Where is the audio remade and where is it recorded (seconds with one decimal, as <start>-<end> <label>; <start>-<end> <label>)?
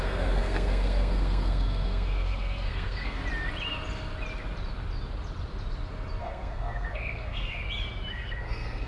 0.0-3.2 remade; 3.2-6.2 recorded; 6.2-7.6 remade; 7.6-8.1 recorded; 8.1-8.9 remade